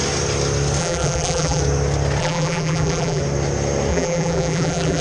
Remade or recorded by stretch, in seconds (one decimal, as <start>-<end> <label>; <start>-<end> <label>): 0.0-0.8 recorded; 0.8-1.6 remade; 1.6-2.2 recorded; 2.2-3.2 remade; 3.2-3.9 recorded; 3.9-5.0 remade

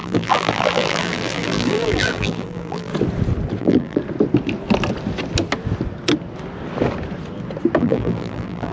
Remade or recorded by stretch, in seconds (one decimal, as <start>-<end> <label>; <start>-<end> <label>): 0.0-2.9 remade; 2.9-3.6 recorded; 3.6-4.0 remade; 4.0-7.8 recorded; 7.8-8.7 remade

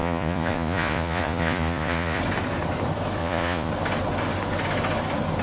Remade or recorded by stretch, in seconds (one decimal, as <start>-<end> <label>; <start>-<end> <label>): 0.0-2.2 remade; 2.2-3.2 recorded; 3.2-3.7 remade; 3.7-5.4 recorded

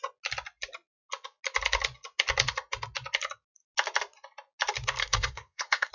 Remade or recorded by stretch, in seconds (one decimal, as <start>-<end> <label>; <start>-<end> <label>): 0.0-5.0 recorded; 5.0-5.9 remade

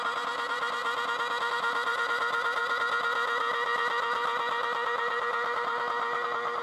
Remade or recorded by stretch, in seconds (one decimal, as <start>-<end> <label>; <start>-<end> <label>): 0.0-0.8 remade; 0.8-1.5 recorded; 1.5-2.6 remade; 2.6-6.6 recorded